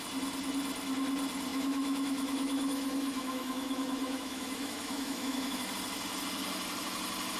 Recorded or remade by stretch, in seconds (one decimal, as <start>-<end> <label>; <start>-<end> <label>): 0.0-1.5 recorded; 1.5-5.7 remade; 5.7-7.4 recorded